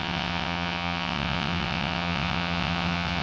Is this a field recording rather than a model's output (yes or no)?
no